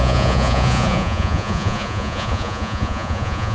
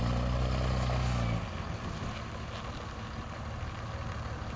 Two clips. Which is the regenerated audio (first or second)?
first